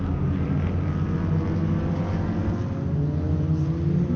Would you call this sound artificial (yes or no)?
no